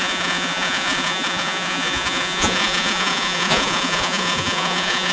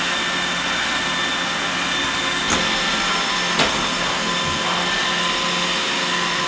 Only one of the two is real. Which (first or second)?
second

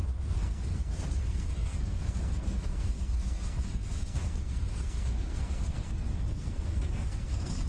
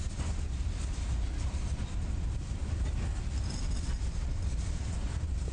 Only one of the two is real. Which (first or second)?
second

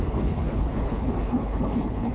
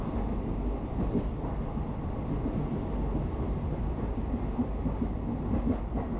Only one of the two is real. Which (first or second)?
second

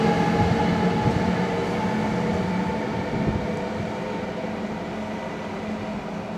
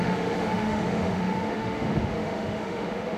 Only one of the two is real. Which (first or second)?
first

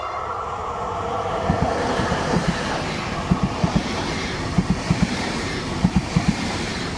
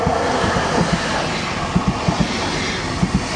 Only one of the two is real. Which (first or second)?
second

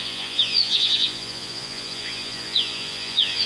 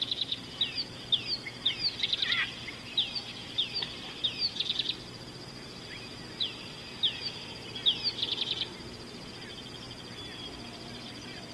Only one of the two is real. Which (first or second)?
second